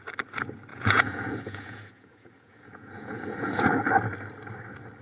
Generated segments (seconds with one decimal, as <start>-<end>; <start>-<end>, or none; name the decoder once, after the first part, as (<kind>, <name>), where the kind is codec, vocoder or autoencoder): 0.7-3.7 (vocoder, Vocos)